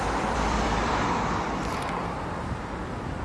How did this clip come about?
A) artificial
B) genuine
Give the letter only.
A